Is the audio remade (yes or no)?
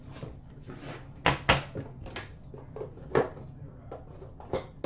no